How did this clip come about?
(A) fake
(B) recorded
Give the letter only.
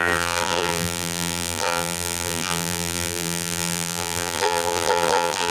A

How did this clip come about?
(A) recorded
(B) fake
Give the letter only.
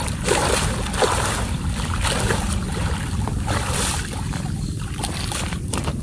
B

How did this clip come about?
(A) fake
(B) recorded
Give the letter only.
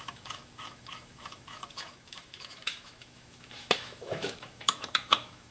A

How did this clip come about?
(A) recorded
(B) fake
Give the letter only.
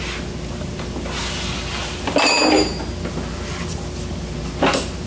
A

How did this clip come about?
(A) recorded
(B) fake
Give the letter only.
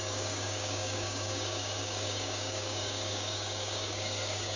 B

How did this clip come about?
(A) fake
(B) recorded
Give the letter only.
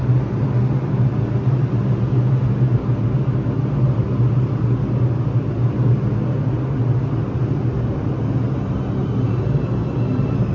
B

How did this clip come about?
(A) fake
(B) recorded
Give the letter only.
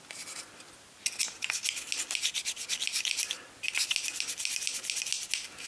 B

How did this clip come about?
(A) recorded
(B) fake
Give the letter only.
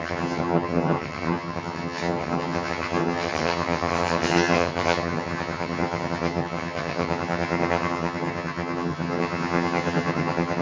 B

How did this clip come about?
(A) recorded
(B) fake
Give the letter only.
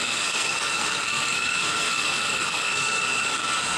B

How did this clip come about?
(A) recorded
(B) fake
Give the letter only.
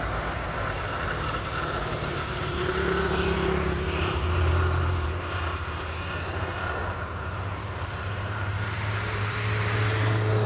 B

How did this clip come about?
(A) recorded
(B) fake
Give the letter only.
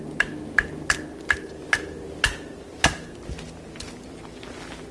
A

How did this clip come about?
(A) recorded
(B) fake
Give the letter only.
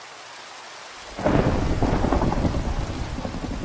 A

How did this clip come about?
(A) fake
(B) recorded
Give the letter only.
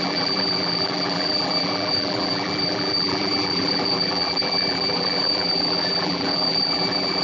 A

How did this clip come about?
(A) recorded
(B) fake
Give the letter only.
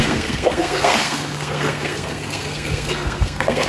B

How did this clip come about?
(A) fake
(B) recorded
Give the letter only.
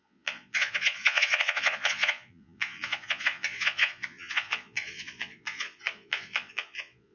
A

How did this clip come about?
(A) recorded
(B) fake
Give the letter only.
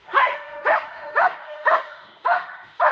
B